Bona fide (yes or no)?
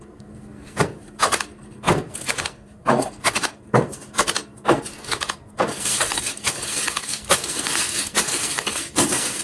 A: no